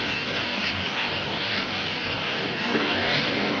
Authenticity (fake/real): fake